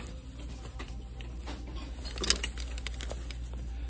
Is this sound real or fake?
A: real